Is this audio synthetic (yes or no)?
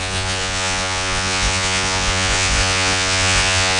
yes